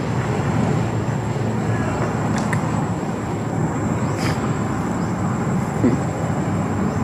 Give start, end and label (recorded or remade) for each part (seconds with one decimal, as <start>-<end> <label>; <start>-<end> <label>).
0.0-7.0 recorded

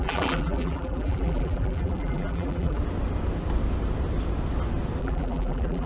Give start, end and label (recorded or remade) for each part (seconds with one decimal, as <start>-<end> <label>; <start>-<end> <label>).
0.0-2.8 remade; 2.8-5.0 recorded; 5.0-5.9 remade

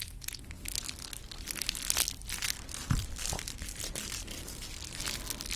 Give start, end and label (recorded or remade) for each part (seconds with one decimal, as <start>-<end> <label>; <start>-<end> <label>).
0.0-3.0 recorded; 3.0-5.0 remade; 5.0-5.6 recorded

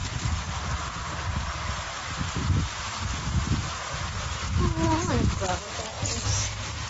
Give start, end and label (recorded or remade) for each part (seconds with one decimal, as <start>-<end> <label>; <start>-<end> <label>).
0.0-6.9 recorded

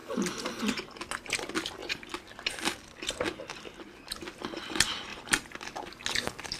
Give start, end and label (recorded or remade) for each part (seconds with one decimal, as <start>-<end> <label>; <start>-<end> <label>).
0.0-5.1 recorded; 5.1-6.0 remade; 6.0-6.6 recorded

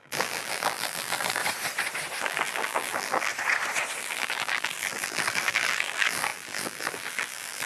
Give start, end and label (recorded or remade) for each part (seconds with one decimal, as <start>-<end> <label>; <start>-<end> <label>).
0.0-1.4 remade; 1.4-2.2 recorded; 2.2-3.3 remade; 3.3-4.0 recorded; 4.0-7.7 remade

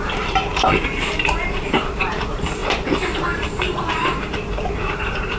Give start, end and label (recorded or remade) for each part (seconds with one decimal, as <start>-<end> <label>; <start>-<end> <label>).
0.0-5.4 remade

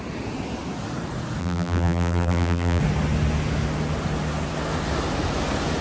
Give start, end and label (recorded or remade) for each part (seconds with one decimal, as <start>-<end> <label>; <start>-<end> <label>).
0.0-1.4 recorded; 1.4-2.8 remade; 2.8-5.8 recorded